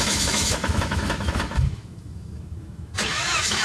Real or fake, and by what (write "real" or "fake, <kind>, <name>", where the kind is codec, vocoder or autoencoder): fake, autoencoder, DAC-VAE